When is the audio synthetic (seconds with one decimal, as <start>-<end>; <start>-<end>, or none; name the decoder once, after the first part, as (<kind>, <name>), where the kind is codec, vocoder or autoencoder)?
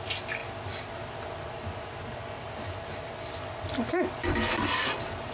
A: none